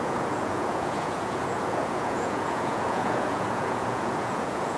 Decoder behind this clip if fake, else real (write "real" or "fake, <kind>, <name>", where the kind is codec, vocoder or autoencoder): fake, vocoder, Vocos